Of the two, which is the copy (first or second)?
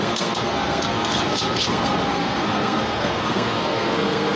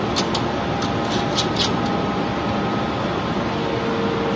first